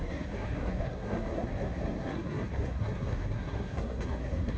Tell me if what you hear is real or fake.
fake